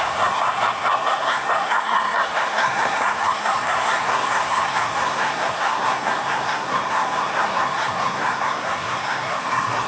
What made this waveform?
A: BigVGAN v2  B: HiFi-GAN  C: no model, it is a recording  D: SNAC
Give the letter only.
D